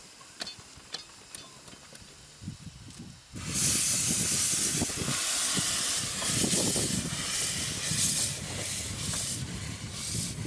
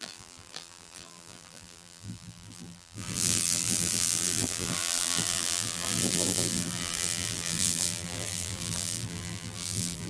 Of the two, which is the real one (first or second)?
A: first